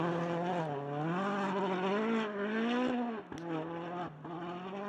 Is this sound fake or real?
real